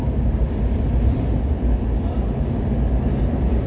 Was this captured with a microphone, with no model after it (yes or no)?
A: yes